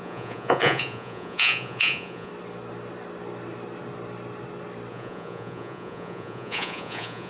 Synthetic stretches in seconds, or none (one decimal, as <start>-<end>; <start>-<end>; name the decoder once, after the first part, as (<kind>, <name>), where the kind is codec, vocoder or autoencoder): 0.0-2.3 (vocoder, Vocos); 4.9-7.3